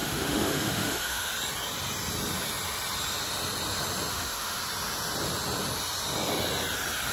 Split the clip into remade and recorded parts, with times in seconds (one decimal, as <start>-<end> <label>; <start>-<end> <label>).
0.0-1.3 remade; 1.3-4.1 recorded; 4.1-4.6 remade; 4.6-7.1 recorded